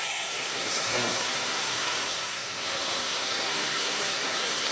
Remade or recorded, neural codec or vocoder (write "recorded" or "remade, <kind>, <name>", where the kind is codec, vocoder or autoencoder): remade, codec, SNAC